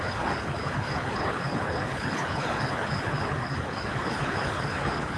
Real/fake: fake